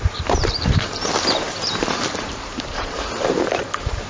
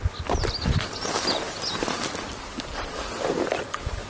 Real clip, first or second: second